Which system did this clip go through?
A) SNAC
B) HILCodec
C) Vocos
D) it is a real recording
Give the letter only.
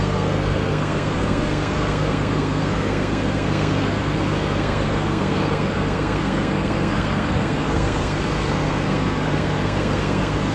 A